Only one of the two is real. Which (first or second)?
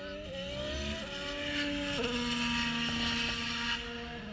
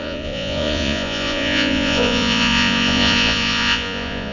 first